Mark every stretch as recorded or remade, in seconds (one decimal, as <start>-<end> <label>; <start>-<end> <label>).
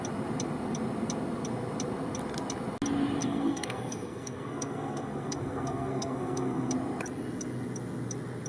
0.0-3.2 recorded; 3.2-6.7 remade; 6.7-8.5 recorded